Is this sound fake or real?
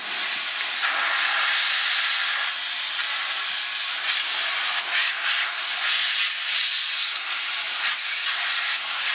real